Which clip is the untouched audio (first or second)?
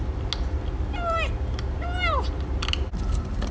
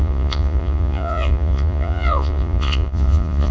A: first